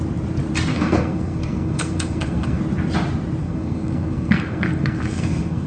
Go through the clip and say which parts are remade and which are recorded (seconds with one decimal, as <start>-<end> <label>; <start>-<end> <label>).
0.0-0.7 recorded; 0.7-2.6 remade; 2.6-3.4 recorded; 3.4-5.7 remade